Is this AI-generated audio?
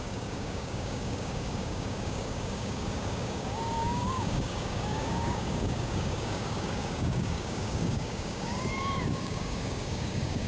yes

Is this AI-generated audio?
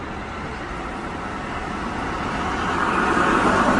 no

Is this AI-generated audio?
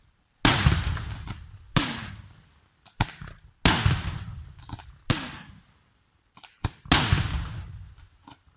no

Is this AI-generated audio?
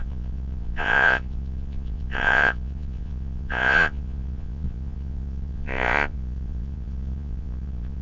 yes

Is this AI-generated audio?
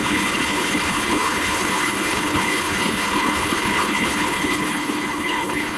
yes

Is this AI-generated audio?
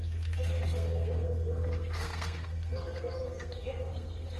yes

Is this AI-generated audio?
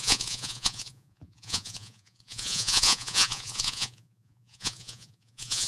yes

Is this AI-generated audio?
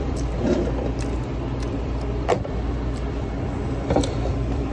yes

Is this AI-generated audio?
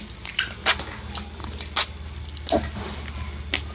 no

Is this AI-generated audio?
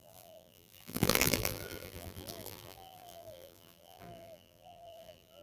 yes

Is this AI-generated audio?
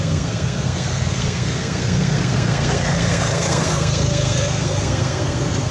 yes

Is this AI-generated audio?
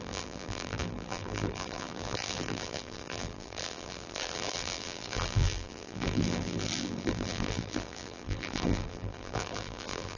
yes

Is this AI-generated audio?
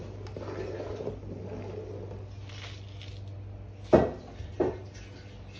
no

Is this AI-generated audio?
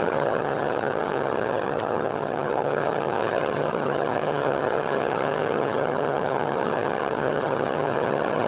yes